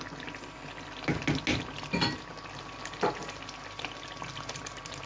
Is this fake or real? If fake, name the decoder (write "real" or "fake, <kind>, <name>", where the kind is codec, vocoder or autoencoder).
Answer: real